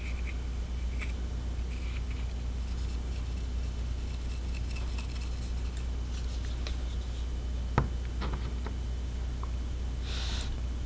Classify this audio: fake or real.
real